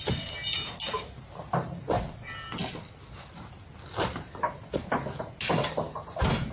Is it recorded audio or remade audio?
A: recorded